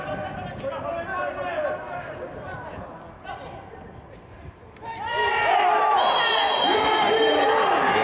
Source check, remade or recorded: recorded